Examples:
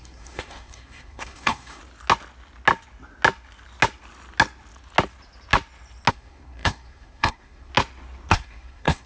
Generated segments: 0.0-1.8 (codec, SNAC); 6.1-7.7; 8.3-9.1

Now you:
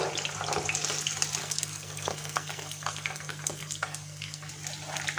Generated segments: 1.4-4.5 (codec, SNAC)

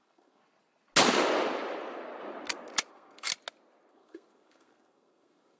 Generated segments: 0.0-0.4 (codec, SNAC); 2.9-3.3; 3.9-5.6

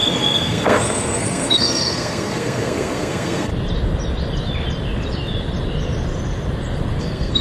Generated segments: 0.0-3.5 (codec, SNAC); 7.0-7.4

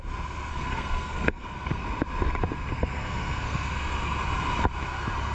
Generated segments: 0.5-1.8 (codec, SNAC); 2.7-3.7

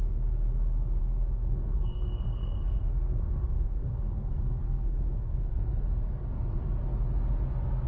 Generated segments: 1.0-5.7 (codec, SNAC)